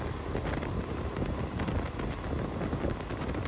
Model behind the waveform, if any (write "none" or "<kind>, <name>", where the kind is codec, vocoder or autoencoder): none